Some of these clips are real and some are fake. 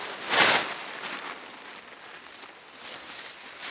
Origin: real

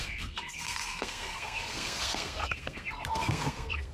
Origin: fake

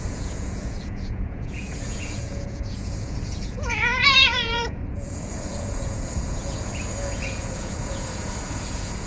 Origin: fake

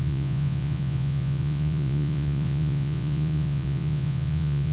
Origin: fake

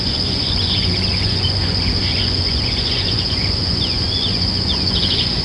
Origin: fake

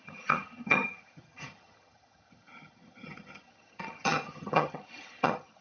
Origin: fake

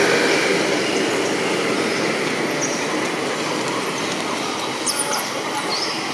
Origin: real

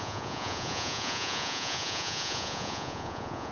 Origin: fake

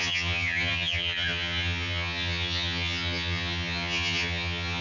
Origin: fake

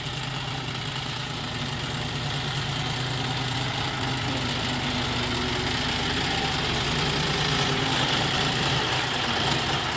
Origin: real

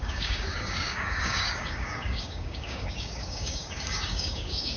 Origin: fake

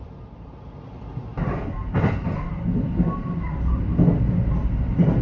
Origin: real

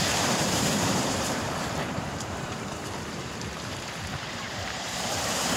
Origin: fake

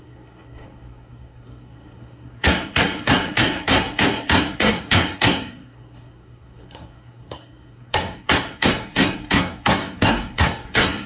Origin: fake